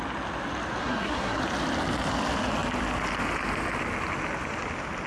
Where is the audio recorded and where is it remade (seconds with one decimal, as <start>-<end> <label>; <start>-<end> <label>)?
0.0-0.8 recorded; 0.8-1.4 remade; 1.4-5.1 recorded